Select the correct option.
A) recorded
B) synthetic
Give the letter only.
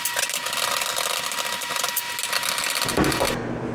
A